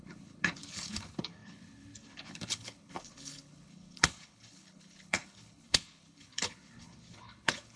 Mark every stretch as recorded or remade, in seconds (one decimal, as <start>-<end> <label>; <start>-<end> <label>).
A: 0.0-7.8 remade